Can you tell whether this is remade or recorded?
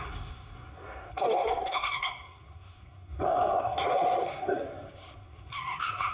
remade